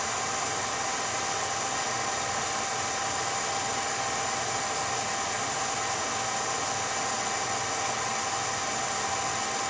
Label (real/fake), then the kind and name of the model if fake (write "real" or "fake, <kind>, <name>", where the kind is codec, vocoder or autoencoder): real